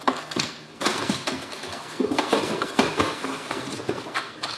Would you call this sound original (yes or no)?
no